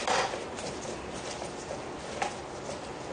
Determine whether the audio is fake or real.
real